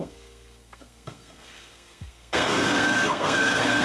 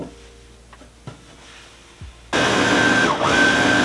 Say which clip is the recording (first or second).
second